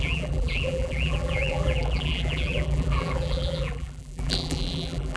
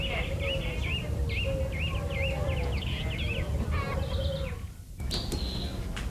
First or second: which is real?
second